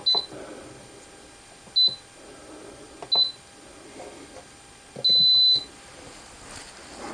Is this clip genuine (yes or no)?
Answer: yes